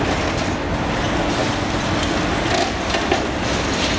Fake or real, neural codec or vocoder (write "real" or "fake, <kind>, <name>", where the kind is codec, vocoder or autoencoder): real